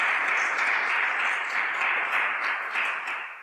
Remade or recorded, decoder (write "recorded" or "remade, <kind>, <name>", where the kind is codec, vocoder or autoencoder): recorded